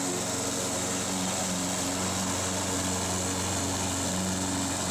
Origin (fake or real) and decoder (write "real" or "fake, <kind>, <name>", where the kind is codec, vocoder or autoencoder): real